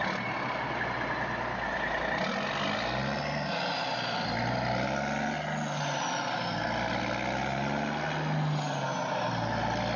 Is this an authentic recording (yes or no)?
yes